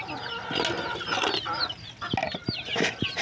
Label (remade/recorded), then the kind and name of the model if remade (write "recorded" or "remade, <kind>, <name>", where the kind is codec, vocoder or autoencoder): recorded